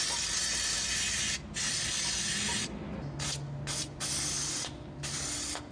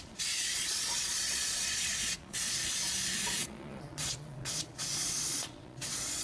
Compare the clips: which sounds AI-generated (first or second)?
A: second